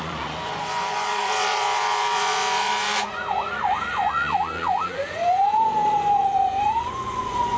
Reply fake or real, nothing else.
fake